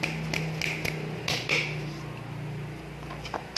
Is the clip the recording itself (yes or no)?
yes